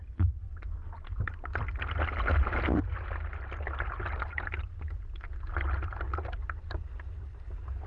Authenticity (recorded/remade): recorded